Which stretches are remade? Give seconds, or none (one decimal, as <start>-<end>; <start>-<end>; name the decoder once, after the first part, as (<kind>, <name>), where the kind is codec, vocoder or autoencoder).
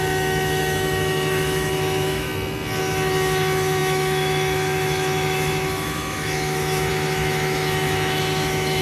0.0-2.3 (autoencoder, DAC-VAE); 2.8-8.8